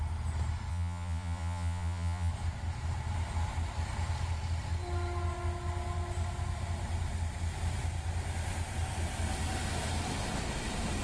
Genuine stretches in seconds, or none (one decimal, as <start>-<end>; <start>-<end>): 0.0-0.7; 2.3-11.0